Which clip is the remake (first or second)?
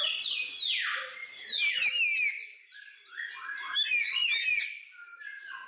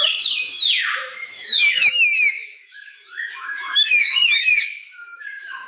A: second